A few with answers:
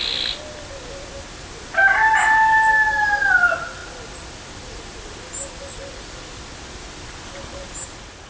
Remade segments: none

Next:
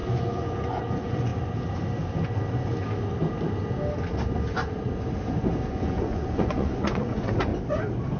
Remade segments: 0.0-1.3 (vocoder, Vocos); 5.7-7.5

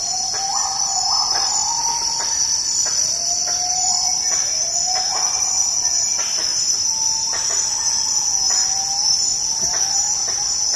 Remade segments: none

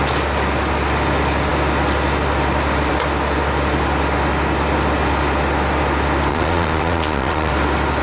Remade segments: 6.3-7.5 (vocoder, Vocos)

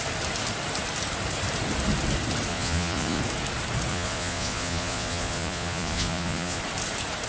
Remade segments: 2.5-3.2 (vocoder, Vocos); 3.9-6.6

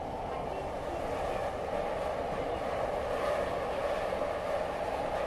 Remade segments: none

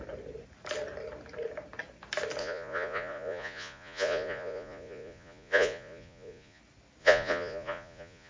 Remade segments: 2.4-6.6 (vocoder, Vocos); 7.0-8.3